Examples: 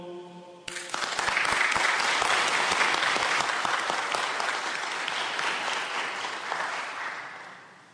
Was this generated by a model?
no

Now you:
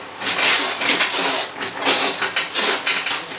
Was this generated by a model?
no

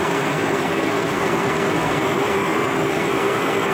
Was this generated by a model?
yes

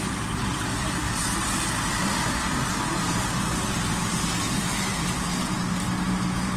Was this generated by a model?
no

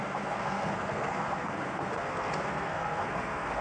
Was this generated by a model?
yes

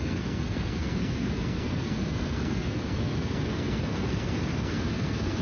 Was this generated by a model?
yes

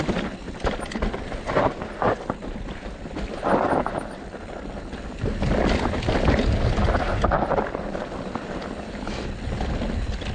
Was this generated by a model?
no